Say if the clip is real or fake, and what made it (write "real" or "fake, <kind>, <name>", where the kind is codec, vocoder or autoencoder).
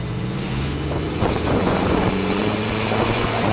fake, vocoder, Vocos